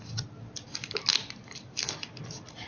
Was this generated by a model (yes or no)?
no